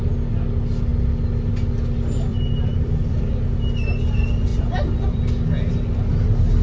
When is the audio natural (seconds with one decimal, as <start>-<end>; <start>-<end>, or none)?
0.0-2.3; 3.2-4.5; 5.3-6.6